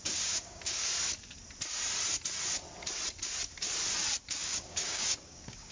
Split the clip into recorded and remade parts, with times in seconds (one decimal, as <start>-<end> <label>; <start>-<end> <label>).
0.0-0.9 remade; 0.9-4.3 recorded; 4.3-5.7 remade